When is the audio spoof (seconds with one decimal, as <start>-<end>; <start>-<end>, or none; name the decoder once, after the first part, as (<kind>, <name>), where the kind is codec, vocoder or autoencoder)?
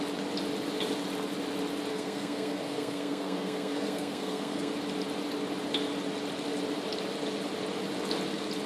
1.9-4.7 (codec, SNAC)